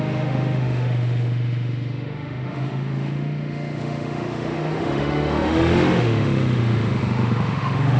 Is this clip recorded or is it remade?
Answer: remade